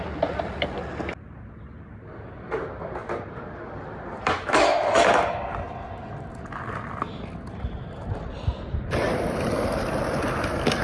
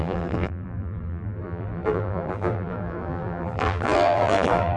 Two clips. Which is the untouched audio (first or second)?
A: first